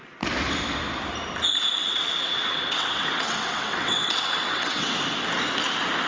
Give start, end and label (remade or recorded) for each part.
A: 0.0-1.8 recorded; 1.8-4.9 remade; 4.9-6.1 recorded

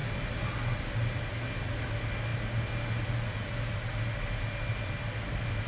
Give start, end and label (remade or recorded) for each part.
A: 0.0-5.7 recorded

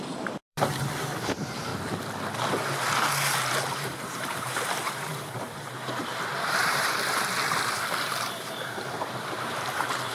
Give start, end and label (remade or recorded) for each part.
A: 0.0-1.7 remade; 1.7-3.6 recorded; 3.6-10.1 remade

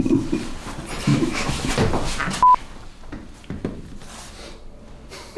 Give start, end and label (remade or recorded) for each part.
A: 0.0-1.1 recorded; 1.1-1.7 remade; 1.7-5.4 recorded

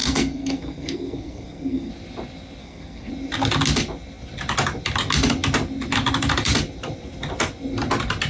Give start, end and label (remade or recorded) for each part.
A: 0.0-1.9 remade; 1.9-2.6 recorded; 2.6-3.1 remade; 3.1-8.3 recorded

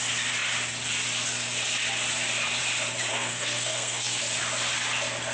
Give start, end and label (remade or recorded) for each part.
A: 0.0-3.1 recorded; 3.1-4.2 remade; 4.2-5.3 recorded